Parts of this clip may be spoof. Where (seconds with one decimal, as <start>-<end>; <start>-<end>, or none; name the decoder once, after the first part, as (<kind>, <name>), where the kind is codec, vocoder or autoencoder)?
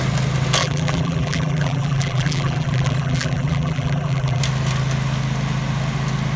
0.6-4.4 (vocoder, BigVGAN v2)